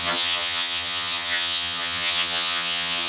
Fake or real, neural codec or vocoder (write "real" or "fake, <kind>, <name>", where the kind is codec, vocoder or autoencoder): fake, vocoder, HiFi-GAN